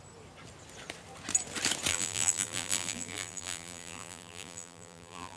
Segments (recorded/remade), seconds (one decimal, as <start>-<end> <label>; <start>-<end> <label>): 0.0-1.9 recorded; 1.9-5.4 remade